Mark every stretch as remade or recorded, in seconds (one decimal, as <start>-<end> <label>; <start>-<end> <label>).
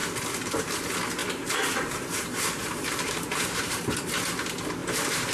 0.0-1.2 recorded; 1.2-4.0 remade; 4.0-4.8 recorded; 4.8-5.3 remade